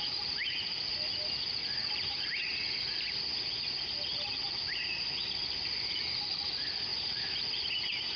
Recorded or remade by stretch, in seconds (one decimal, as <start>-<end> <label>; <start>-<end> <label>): 0.0-8.2 recorded